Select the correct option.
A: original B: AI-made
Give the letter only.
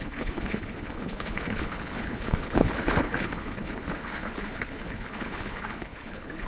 B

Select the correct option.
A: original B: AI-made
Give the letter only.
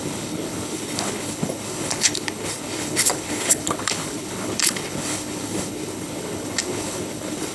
B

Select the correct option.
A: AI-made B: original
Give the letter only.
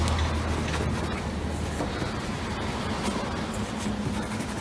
B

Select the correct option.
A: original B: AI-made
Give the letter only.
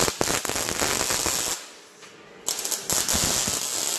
A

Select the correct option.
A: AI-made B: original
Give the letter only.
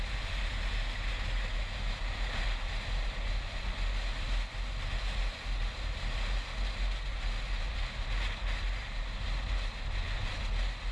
B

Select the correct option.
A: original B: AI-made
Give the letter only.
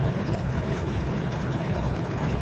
B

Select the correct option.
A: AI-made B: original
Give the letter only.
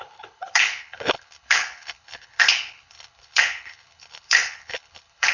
A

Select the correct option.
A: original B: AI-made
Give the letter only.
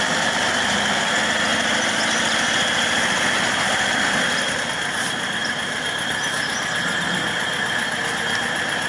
A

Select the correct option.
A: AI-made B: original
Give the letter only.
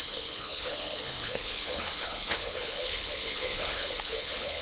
A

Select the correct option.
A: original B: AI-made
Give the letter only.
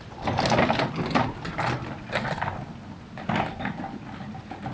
A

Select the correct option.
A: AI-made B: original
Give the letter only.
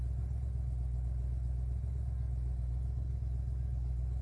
B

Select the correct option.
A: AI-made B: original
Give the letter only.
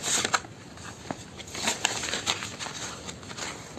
B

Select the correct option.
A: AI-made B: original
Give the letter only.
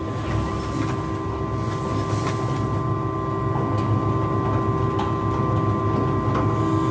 B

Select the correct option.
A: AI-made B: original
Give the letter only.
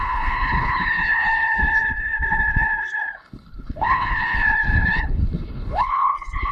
A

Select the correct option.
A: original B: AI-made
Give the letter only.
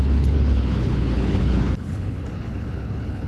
B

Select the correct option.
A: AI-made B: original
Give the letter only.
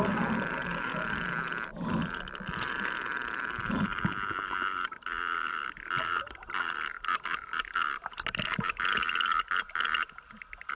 B